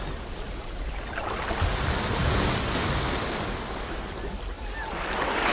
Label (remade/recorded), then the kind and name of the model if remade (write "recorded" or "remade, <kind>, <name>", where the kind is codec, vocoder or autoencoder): recorded